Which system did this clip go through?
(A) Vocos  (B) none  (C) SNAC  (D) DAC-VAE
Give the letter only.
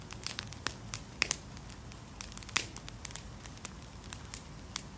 B